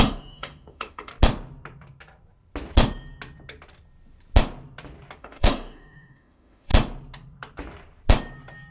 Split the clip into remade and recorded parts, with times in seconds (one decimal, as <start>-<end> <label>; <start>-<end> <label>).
0.0-1.1 remade; 1.1-5.2 recorded; 5.2-6.7 remade; 6.7-8.7 recorded